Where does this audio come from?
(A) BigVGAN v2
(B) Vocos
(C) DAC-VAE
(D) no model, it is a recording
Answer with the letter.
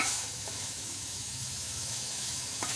C